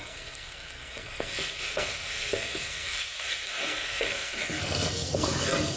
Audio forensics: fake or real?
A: fake